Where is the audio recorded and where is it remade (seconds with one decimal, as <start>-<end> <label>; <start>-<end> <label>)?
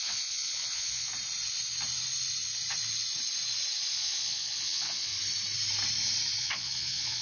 0.0-1.1 remade; 1.1-3.9 recorded; 3.9-5.1 remade; 5.1-6.4 recorded; 6.4-7.2 remade